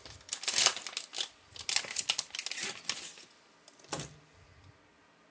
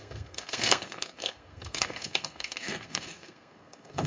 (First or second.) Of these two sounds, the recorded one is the first